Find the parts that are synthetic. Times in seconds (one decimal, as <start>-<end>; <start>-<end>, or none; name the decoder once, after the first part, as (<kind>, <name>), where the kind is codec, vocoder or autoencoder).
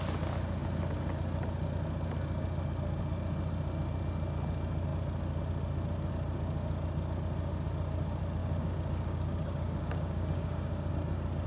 8.4-10.9 (codec, DAC)